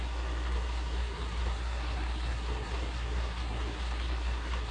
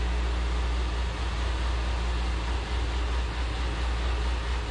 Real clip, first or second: second